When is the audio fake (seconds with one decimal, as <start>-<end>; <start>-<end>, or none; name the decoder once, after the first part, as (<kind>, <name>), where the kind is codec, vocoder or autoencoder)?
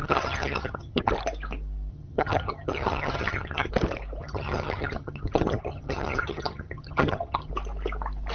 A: 0.0-1.1 (vocoder, HiFi-GAN); 1.9-3.7; 4.2-7.5